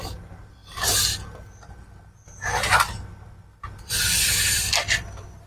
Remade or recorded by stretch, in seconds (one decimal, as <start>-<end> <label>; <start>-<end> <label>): 0.0-5.5 recorded